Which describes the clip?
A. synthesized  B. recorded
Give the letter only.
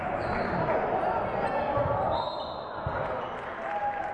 B